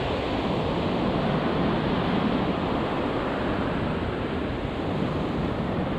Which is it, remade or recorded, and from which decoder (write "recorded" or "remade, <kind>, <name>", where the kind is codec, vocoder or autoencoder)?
remade, vocoder, BigVGAN v2